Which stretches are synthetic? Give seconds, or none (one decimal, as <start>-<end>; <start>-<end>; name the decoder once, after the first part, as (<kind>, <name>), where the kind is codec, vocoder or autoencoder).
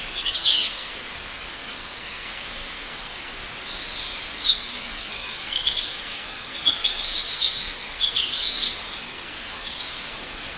0.0-3.3 (codec, SNAC); 4.4-10.6